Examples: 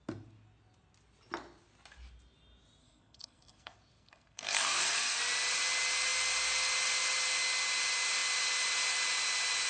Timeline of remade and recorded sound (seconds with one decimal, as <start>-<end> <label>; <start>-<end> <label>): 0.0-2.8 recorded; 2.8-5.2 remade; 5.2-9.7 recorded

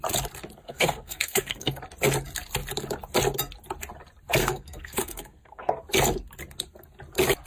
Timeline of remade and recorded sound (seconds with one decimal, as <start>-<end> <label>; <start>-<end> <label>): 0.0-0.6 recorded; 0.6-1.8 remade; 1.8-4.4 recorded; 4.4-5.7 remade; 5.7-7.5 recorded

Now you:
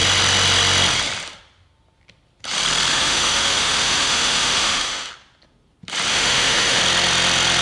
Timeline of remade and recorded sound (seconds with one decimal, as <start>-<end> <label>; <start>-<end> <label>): 0.0-2.9 recorded; 2.9-5.1 remade; 5.1-6.1 recorded; 6.1-6.8 remade; 6.8-7.6 recorded